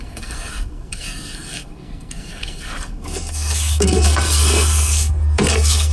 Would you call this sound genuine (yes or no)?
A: no